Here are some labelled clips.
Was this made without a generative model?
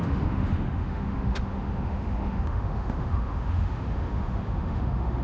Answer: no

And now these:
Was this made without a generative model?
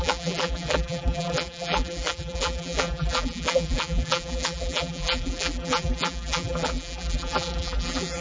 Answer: no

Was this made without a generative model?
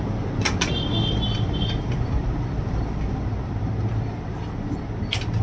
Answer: yes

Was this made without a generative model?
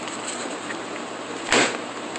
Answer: yes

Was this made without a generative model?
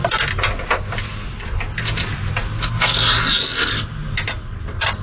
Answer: yes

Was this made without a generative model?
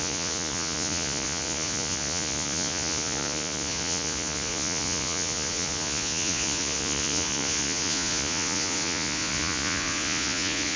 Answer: no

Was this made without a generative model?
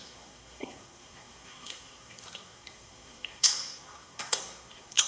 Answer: no